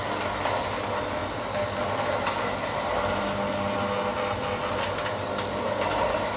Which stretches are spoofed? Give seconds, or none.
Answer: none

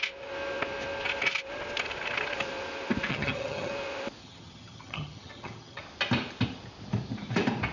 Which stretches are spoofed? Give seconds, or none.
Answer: 3.1-3.7 (vocoder, HiFi-GAN); 4.2-5.8

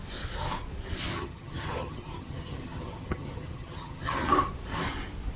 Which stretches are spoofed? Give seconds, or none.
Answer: 1.1-4.3 (vocoder, HiFi-GAN)

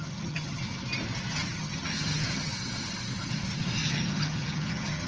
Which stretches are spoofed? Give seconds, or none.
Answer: 0.0-0.6 (vocoder, HiFi-GAN); 1.3-2.5; 3.8-5.1